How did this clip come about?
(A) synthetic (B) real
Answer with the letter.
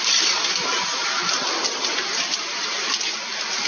B